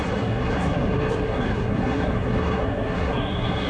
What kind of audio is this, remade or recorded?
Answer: remade